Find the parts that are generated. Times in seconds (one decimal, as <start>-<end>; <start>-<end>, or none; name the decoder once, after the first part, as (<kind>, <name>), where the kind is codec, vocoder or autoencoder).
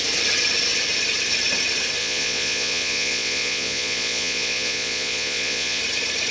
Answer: 2.0-5.8 (vocoder, Vocos)